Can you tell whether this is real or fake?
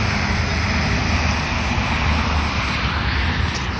real